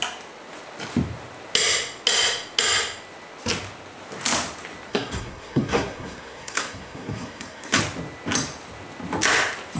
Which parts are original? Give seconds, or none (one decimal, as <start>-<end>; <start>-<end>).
0.0-4.9; 7.8-9.8